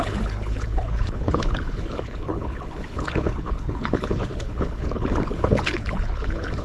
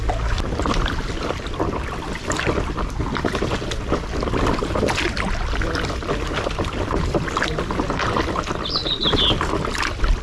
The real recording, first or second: second